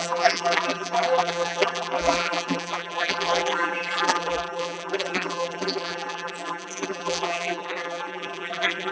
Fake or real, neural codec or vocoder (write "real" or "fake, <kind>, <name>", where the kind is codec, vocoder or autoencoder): fake, vocoder, BigVGAN v2